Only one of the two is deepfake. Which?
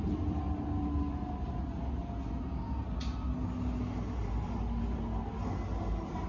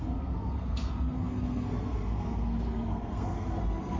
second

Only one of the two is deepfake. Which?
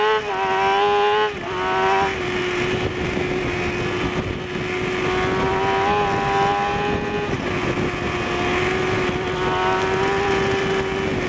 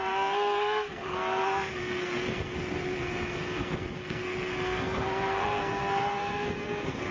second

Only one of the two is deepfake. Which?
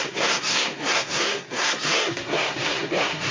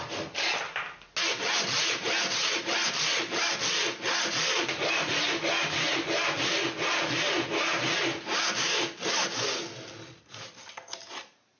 first